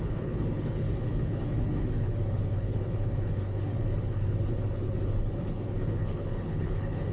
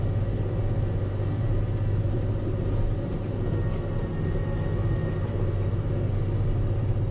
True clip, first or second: second